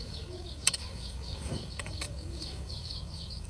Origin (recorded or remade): remade